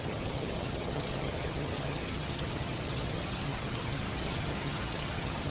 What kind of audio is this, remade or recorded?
remade